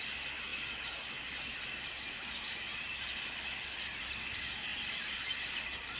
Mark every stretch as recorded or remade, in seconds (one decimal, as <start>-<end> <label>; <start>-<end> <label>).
0.0-6.0 recorded